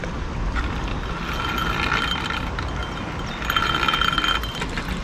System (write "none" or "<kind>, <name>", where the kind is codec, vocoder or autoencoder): none